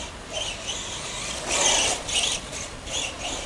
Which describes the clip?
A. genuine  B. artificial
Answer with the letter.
A